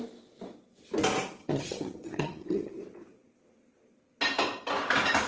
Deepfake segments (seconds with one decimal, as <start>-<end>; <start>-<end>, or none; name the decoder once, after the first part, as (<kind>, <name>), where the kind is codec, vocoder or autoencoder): 1.4-2.7 (vocoder, HiFi-GAN)